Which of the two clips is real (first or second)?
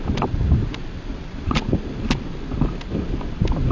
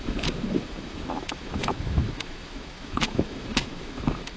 first